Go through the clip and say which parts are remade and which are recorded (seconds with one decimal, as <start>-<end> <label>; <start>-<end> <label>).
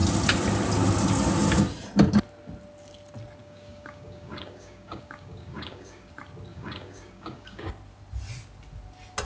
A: 0.0-3.4 recorded; 3.4-6.1 remade; 6.1-6.5 recorded; 6.5-7.7 remade; 7.7-9.2 recorded